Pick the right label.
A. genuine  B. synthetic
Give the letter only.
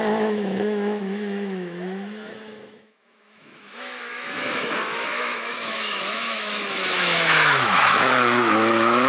B